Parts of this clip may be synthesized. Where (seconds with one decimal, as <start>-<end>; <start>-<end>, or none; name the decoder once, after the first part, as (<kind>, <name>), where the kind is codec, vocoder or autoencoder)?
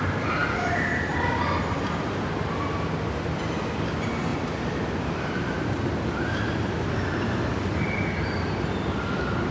4.3-8.3 (vocoder, BigVGAN v2)